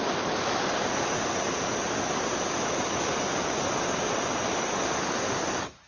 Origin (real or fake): real